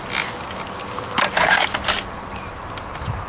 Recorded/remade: recorded